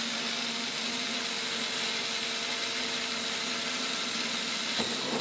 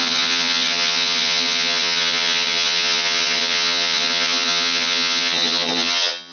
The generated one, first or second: second